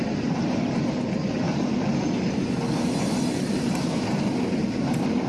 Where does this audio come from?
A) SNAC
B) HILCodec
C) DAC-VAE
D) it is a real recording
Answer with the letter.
D